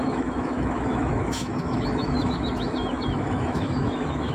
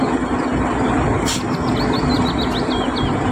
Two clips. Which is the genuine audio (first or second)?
second